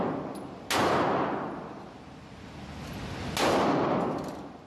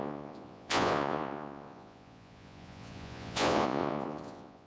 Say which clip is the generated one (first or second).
second